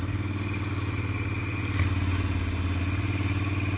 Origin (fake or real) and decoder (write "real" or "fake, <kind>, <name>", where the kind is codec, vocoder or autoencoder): real